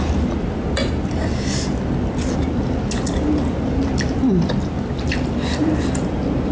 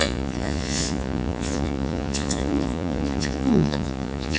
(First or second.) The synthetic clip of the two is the second